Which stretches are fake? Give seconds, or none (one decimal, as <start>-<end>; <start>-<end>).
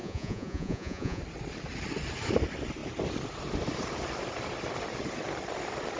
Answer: 0.0-1.2